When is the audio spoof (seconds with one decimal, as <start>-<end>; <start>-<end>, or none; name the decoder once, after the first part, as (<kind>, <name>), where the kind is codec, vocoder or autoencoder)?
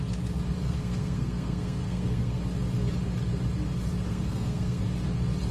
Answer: 0.6-2.4 (codec, SNAC); 4.1-4.8